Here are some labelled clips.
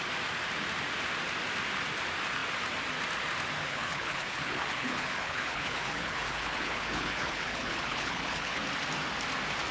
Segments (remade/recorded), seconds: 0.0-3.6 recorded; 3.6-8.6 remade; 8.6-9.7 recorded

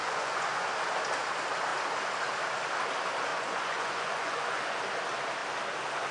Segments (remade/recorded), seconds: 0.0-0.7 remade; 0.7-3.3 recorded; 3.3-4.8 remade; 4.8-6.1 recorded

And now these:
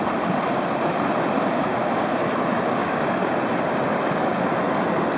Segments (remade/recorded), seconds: 0.0-1.7 recorded; 1.7-2.2 remade; 2.2-2.8 recorded; 2.8-3.3 remade; 3.3-5.2 recorded

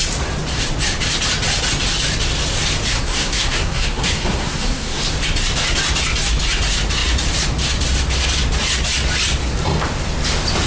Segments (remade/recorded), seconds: 0.0-2.9 recorded; 2.9-5.0 remade; 5.0-10.7 recorded